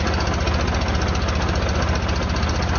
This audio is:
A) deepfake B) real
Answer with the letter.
B